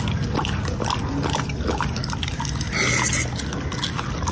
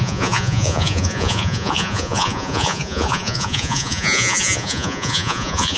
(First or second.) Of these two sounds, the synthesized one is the second